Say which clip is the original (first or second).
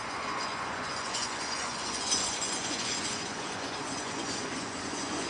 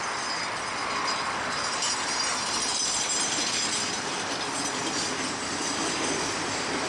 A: second